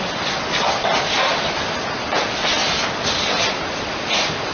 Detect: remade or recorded recorded